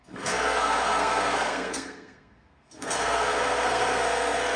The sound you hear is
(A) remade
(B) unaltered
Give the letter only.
A